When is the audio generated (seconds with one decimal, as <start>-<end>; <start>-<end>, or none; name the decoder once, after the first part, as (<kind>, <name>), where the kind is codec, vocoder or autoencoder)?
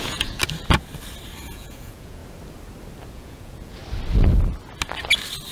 0.0-0.4 (vocoder, Vocos); 1.5-2.2; 3.1-3.8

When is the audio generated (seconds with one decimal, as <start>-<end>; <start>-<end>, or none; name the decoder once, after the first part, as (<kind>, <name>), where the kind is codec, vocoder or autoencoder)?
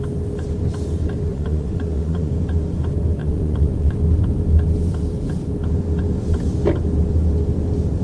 1.3-2.3 (vocoder, Vocos); 3.2-4.0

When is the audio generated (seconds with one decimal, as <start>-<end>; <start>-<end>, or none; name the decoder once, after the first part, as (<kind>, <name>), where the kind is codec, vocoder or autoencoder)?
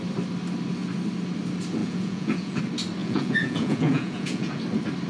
1.8-2.6 (vocoder, Vocos); 3.0-4.6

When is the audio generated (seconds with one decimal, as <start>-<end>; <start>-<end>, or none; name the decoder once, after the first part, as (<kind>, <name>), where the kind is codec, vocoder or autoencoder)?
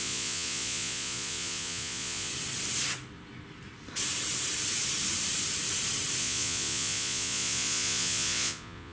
0.0-2.3 (vocoder, Vocos); 6.2-8.9